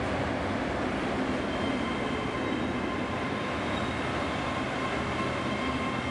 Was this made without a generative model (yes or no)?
yes